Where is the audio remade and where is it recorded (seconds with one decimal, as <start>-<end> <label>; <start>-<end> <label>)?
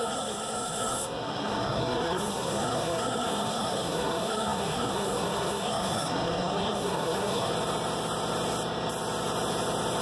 0.0-7.5 remade; 7.5-10.0 recorded